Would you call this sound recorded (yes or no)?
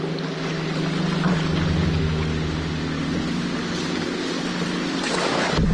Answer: yes